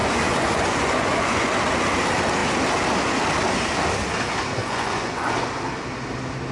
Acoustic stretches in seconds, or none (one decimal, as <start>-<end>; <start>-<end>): 1.5-4.6; 5.6-6.5